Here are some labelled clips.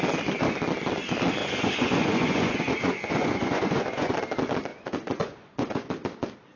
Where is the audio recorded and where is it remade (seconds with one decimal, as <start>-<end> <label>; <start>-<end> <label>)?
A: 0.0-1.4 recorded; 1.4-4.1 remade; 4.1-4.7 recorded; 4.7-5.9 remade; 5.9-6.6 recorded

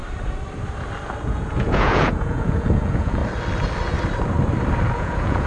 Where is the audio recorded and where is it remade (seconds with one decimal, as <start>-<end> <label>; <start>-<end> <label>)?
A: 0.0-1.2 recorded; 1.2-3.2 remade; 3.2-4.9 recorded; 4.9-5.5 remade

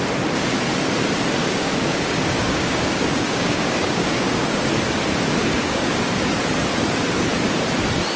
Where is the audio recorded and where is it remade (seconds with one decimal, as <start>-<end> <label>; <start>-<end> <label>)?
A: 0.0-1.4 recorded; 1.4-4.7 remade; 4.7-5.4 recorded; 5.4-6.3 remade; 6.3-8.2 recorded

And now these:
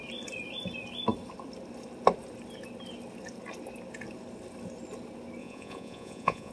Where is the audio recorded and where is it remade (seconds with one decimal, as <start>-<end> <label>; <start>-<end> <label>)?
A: 0.0-5.4 recorded; 5.4-6.5 remade

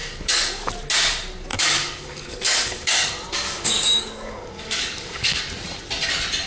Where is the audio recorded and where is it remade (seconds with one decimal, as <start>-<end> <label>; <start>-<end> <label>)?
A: 0.0-0.7 remade; 0.7-1.5 recorded; 1.5-5.4 remade; 5.4-6.5 recorded